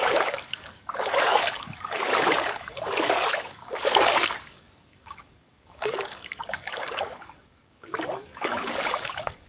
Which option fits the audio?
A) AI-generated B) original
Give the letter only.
A